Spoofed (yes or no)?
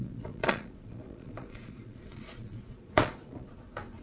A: yes